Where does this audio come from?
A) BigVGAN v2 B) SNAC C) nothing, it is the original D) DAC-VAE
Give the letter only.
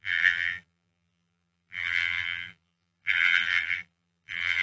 A